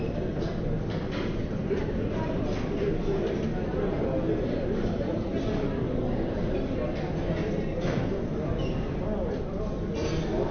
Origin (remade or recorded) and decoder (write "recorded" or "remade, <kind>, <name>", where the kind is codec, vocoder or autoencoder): recorded